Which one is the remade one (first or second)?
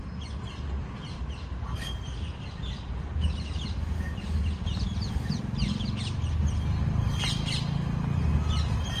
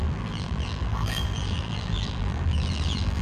second